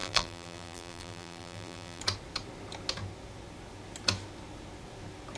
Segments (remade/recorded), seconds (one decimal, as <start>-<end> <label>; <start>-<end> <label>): 0.0-2.0 remade; 2.0-5.4 recorded